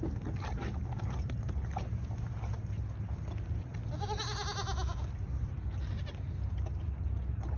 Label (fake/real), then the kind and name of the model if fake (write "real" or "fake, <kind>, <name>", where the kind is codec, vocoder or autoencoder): real